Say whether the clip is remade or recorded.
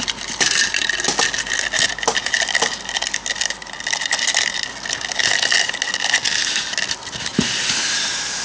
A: recorded